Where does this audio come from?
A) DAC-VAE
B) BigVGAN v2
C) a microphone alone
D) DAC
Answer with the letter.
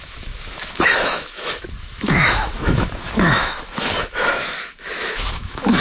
A